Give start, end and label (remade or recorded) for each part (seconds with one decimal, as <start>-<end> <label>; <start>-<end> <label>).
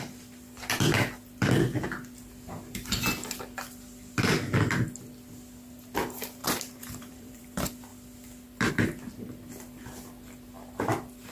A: 0.0-6.4 recorded; 6.4-7.4 remade; 7.4-11.3 recorded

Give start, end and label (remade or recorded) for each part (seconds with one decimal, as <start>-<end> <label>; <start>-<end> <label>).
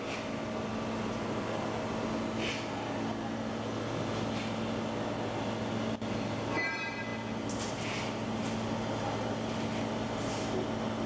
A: 0.0-11.1 recorded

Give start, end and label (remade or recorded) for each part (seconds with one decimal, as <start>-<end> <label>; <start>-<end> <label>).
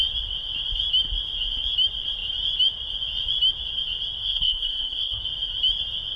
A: 0.0-4.2 recorded; 4.2-5.2 remade; 5.2-6.2 recorded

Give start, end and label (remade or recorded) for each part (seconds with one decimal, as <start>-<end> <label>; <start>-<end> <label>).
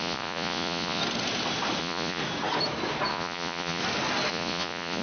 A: 0.0-1.0 remade; 1.0-1.8 recorded; 1.8-2.2 remade; 2.2-3.1 recorded; 3.1-3.8 remade; 3.8-4.3 recorded; 4.3-5.0 remade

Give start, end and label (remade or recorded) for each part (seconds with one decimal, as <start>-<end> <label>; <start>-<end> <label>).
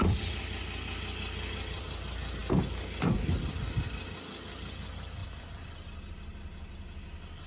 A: 0.0-7.5 recorded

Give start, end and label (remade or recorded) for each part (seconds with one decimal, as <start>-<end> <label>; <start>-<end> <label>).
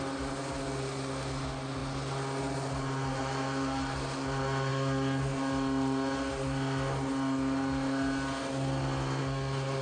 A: 0.0-9.8 recorded